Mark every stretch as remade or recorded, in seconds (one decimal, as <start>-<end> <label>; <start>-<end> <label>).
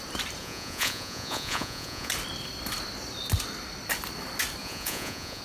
0.0-0.4 recorded; 0.4-2.1 remade; 2.1-4.6 recorded; 4.6-5.4 remade